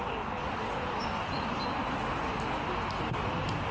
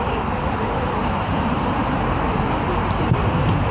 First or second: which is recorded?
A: first